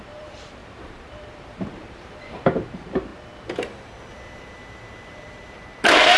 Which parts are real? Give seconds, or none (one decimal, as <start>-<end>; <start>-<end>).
3.1-4.4